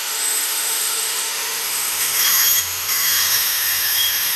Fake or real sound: fake